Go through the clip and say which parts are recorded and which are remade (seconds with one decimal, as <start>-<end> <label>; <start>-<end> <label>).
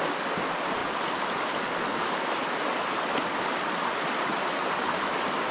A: 0.0-5.5 recorded